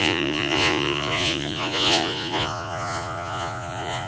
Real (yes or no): no